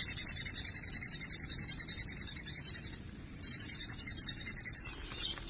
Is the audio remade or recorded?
recorded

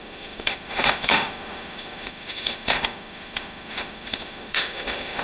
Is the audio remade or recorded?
remade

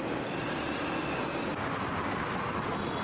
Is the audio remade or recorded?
recorded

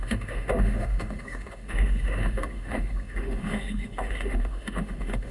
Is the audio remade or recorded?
remade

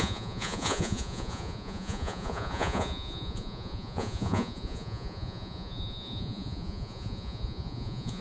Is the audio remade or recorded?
remade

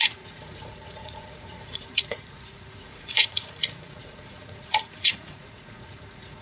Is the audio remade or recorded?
remade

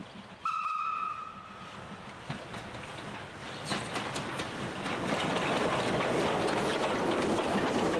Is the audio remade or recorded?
recorded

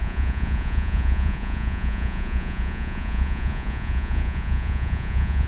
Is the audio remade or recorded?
remade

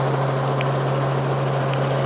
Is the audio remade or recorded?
recorded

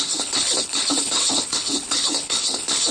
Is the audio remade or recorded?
remade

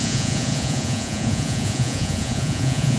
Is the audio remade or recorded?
remade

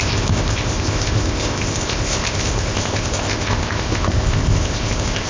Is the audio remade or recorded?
remade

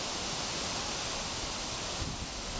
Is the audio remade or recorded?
recorded